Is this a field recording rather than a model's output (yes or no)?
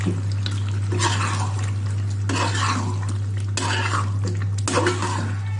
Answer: yes